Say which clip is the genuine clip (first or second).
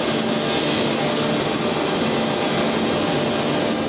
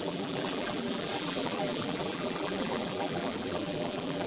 first